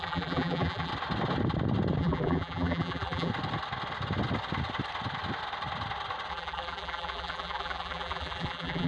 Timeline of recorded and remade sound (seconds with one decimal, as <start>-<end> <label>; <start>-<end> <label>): 0.0-0.9 remade; 0.9-2.0 recorded; 2.0-3.3 remade; 3.3-6.3 recorded; 6.3-8.9 remade